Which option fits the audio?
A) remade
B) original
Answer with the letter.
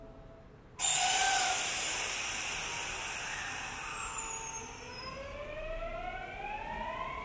B